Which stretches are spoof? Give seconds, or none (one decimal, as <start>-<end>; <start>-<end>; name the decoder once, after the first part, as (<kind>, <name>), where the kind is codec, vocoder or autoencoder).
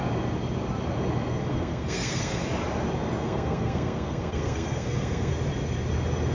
1.4-2.4 (codec, SNAC); 3.2-5.3